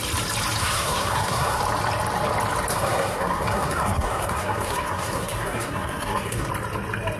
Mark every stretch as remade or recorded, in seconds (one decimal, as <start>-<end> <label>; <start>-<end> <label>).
0.0-0.6 recorded; 0.6-1.6 remade; 1.6-2.7 recorded; 2.7-6.5 remade; 6.5-7.2 recorded